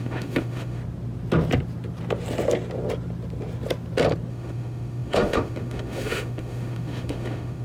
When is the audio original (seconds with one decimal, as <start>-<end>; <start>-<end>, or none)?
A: 0.8-4.3